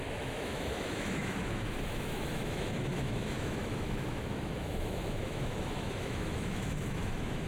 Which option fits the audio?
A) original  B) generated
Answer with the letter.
B